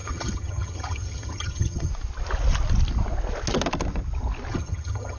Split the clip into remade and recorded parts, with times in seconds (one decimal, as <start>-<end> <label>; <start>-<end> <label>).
0.0-1.9 remade; 1.9-4.5 recorded; 4.5-5.2 remade